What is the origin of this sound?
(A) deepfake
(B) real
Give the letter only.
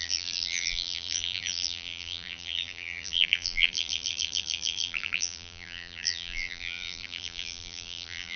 A